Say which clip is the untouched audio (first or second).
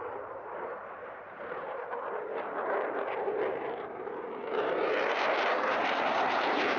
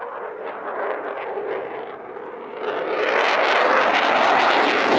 second